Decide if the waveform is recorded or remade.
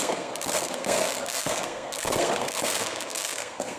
remade